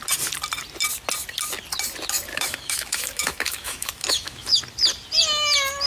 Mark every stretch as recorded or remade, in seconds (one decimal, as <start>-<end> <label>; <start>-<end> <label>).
0.0-2.3 recorded; 2.3-4.6 remade; 4.6-5.9 recorded